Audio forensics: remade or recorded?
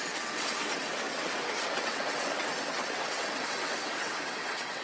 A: remade